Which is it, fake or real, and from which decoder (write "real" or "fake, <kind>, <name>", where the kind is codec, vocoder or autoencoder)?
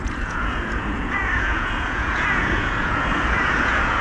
fake, vocoder, Vocos